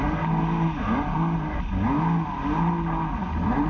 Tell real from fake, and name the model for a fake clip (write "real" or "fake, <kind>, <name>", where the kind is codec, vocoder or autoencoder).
real